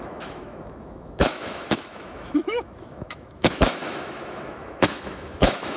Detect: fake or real fake